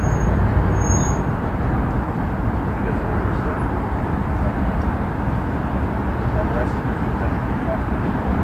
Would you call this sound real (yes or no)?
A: no